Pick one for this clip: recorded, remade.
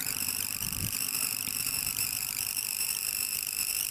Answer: remade